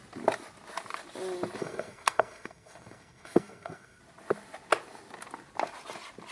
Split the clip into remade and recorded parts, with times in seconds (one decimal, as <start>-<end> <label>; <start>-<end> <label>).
0.0-1.6 recorded; 1.6-4.0 remade; 4.0-6.3 recorded